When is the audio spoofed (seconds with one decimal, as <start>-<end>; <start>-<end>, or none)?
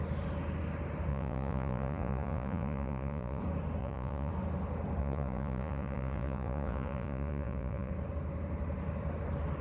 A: 1.1-3.4; 3.8-4.3; 5.0-7.9